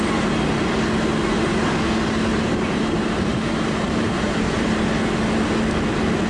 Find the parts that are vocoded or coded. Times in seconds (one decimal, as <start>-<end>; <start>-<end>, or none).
2.3-4.9